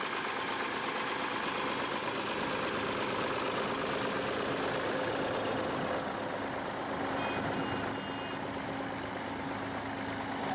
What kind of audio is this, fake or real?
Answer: real